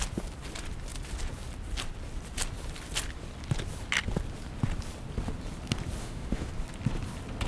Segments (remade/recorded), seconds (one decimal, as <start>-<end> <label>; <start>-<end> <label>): 0.0-6.0 recorded; 6.0-6.5 remade; 6.5-7.5 recorded